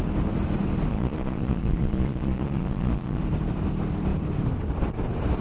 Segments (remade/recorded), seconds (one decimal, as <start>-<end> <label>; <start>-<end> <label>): 0.0-0.9 recorded; 0.9-3.2 remade; 3.2-5.4 recorded

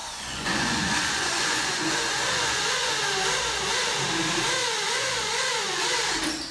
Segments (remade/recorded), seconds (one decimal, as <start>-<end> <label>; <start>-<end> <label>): 0.0-2.9 remade; 2.9-4.6 recorded; 4.6-5.8 remade; 5.8-6.5 recorded

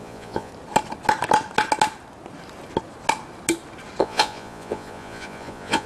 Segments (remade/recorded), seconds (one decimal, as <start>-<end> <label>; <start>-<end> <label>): 0.0-0.5 remade; 0.5-4.0 recorded; 4.0-5.9 remade

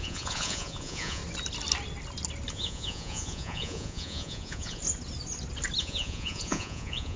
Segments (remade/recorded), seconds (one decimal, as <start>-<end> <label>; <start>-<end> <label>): 0.0-1.2 remade; 1.2-2.5 recorded; 2.5-4.8 remade; 4.8-5.8 recorded; 5.8-7.2 remade

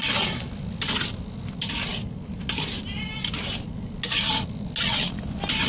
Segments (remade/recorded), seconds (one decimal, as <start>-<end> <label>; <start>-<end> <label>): 0.0-5.7 recorded